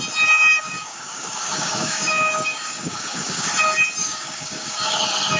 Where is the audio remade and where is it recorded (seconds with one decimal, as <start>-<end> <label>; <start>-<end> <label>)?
0.0-0.5 recorded; 0.5-3.5 remade; 3.5-4.0 recorded; 4.0-5.0 remade; 5.0-5.4 recorded